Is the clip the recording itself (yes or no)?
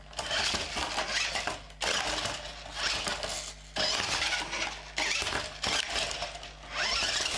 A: yes